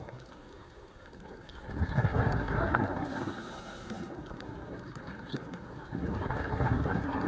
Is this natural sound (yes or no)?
no